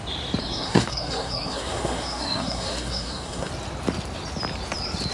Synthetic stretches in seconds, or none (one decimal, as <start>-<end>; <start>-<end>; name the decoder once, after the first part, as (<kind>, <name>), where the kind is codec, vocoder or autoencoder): 0.4-3.5 (codec, SNAC)